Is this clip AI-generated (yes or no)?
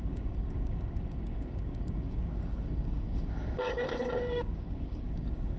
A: yes